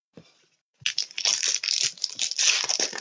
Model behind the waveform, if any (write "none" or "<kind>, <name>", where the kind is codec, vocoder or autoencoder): none